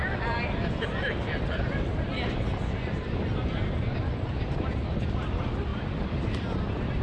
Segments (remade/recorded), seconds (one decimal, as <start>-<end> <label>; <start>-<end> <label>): 0.0-7.0 recorded